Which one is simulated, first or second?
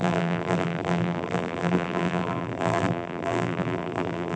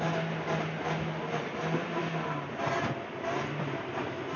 first